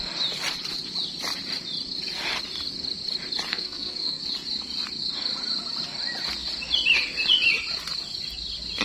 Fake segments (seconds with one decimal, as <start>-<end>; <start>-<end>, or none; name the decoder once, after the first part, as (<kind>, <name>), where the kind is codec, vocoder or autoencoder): 3.5-4.2 (codec, SNAC)